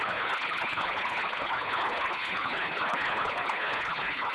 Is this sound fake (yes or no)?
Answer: yes